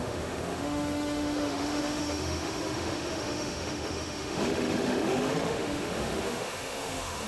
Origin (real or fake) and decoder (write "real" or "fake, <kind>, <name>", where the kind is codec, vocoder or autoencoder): fake, autoencoder, DAC-VAE